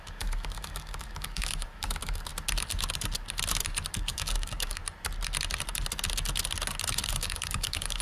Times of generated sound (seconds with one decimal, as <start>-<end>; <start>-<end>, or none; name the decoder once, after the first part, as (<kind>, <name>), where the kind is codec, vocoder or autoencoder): 0.0-2.3 (codec, DAC); 3.9-4.8; 7.1-8.0